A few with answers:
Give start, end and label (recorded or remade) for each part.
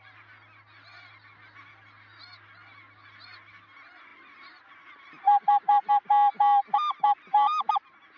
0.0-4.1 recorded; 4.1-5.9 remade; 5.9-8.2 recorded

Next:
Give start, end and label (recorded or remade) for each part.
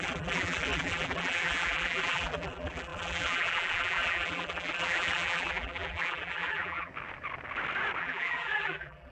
0.0-6.9 remade; 6.9-8.0 recorded; 8.0-9.1 remade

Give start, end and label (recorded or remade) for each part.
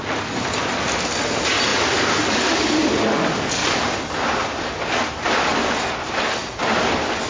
0.0-1.7 recorded; 1.7-2.3 remade; 2.3-3.6 recorded; 3.6-4.4 remade; 4.4-7.3 recorded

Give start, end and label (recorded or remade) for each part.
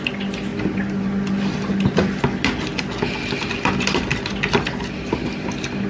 0.0-0.5 remade; 0.5-3.7 recorded; 3.7-5.9 remade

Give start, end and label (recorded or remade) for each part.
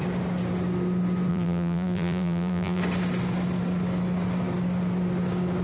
0.0-1.3 recorded; 1.3-2.8 remade; 2.8-5.6 recorded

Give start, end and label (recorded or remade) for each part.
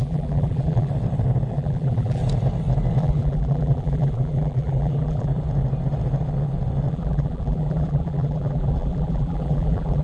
0.0-0.9 remade; 0.9-1.5 recorded; 1.5-2.2 remade; 2.2-3.0 recorded; 3.0-5.3 remade; 5.3-6.9 recorded; 6.9-10.0 remade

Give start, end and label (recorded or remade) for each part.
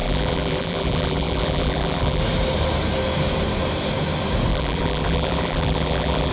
0.0-2.2 remade; 2.2-4.5 recorded; 4.5-6.3 remade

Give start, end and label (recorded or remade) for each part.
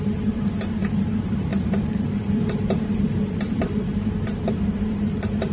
0.0-5.5 remade